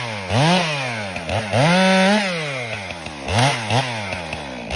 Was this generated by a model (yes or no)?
no